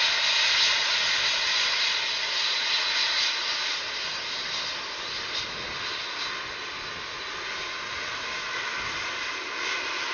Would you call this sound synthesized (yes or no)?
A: no